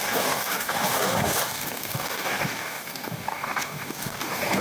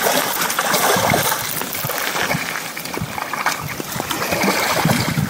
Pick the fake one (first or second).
first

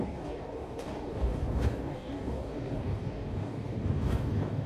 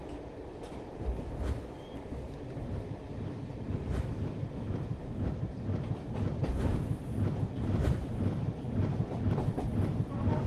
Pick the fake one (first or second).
first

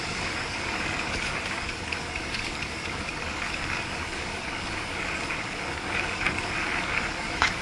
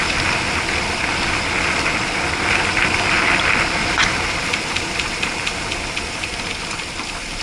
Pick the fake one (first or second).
first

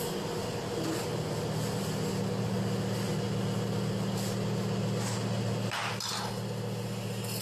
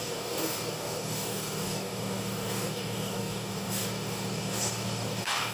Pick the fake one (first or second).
second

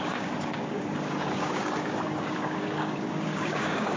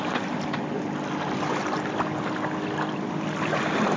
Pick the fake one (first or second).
first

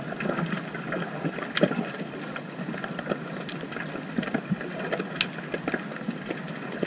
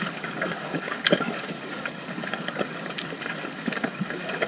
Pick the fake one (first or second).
second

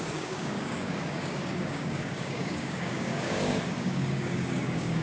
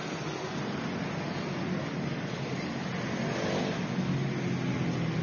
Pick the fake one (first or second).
first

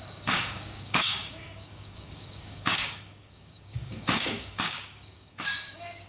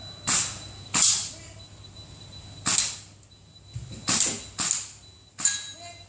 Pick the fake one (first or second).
first